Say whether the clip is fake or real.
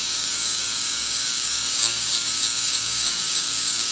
fake